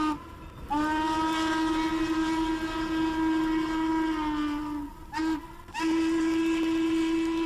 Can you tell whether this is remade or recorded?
recorded